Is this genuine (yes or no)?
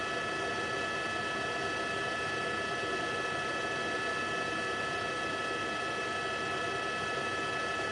yes